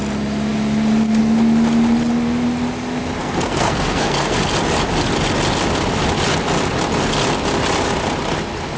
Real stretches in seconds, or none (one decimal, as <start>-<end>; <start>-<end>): 0.0-3.2; 4.4-8.8